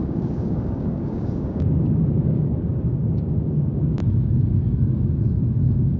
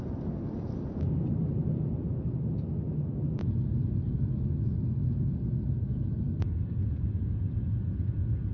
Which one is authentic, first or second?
second